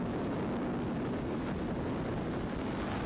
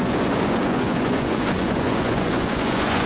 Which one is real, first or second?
first